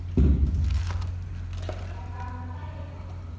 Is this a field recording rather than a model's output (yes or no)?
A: yes